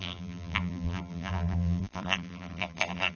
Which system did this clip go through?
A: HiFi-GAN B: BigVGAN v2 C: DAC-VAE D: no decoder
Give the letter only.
B